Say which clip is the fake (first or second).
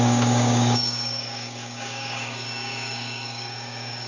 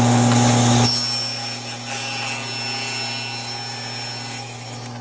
first